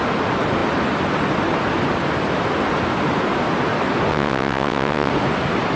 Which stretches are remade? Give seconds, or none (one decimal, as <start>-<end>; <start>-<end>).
4.1-5.1